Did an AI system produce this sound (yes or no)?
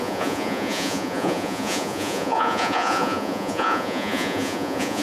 yes